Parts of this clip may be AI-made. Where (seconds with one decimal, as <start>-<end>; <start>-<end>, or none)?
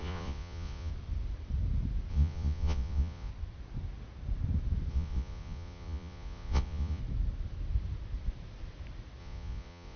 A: 0.0-0.9; 2.1-3.3; 4.9-7.0; 9.2-10.0